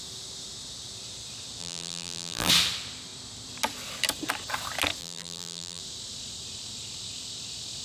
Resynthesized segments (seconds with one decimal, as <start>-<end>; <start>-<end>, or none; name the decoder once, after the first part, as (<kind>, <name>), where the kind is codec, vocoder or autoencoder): 1.6-2.5 (vocoder, BigVGAN v2); 5.0-5.8